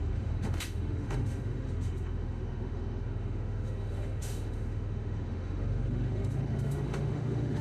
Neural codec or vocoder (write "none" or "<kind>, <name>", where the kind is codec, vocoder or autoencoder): autoencoder, DAC-VAE